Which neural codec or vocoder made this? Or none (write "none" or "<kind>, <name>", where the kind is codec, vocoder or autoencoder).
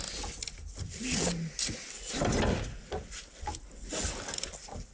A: none